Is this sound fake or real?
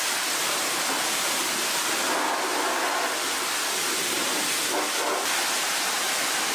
real